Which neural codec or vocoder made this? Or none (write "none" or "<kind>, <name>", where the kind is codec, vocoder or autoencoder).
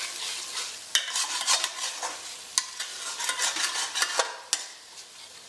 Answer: none